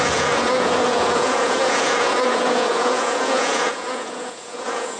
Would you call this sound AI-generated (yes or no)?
yes